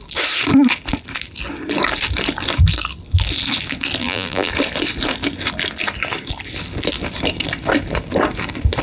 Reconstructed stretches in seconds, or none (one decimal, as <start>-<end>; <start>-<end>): 4.0-4.5